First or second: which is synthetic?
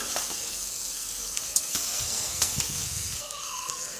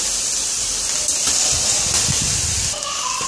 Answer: first